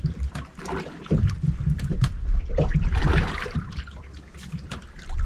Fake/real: fake